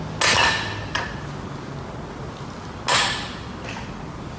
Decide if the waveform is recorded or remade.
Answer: recorded